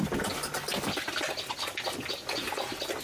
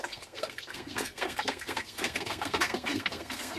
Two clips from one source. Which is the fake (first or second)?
second